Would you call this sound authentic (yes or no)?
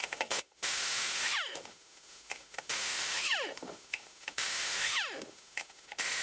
no